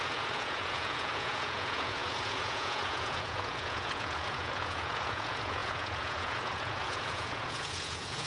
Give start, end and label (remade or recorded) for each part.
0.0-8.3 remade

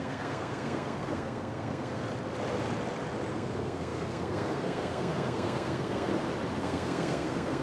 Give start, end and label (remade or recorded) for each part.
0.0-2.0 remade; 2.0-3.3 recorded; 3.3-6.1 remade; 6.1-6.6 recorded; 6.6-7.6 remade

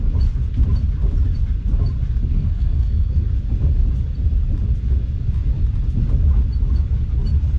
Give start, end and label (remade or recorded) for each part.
0.0-2.3 recorded; 2.3-3.3 remade; 3.3-7.6 recorded

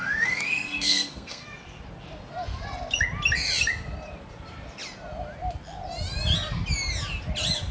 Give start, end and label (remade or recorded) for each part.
0.0-1.5 remade; 1.5-7.7 recorded